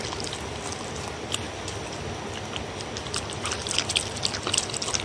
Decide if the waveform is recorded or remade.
recorded